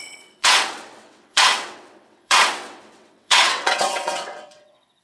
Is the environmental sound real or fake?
fake